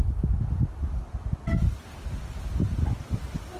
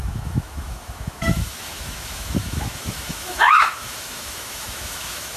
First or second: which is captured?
first